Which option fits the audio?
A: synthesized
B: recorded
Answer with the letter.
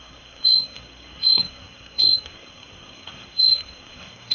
A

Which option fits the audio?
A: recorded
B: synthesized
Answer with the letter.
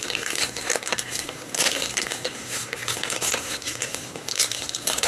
B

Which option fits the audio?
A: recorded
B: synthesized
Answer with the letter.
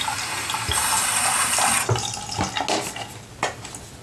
A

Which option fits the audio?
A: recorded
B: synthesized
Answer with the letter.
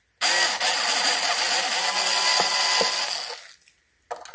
A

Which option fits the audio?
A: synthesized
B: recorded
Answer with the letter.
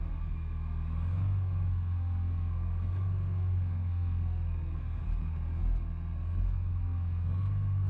A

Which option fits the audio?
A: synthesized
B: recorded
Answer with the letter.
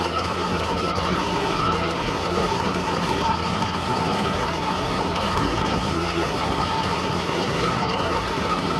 A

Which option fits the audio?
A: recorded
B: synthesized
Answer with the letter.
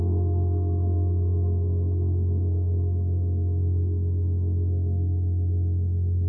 B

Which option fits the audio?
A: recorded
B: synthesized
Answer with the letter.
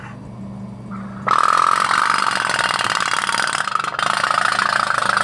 A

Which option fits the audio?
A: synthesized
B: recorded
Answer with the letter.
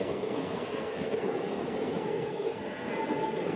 A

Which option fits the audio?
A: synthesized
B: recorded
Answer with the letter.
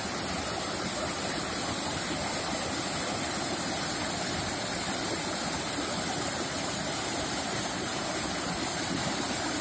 B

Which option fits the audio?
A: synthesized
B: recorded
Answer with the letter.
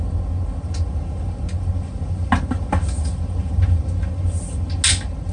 B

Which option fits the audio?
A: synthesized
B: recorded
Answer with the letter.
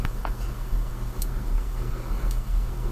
A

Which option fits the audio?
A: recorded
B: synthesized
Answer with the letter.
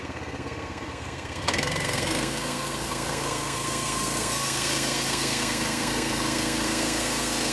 B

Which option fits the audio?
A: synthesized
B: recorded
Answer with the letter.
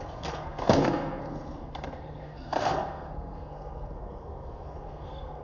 A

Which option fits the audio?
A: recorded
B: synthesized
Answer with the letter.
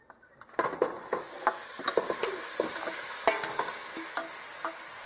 A